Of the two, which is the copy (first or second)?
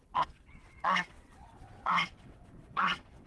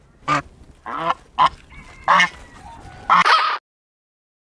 first